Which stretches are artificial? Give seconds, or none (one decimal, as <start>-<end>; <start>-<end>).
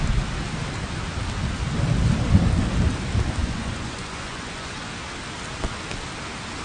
3.4-4.9